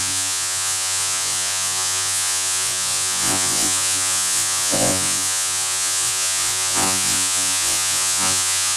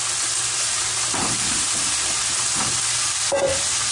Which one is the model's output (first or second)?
first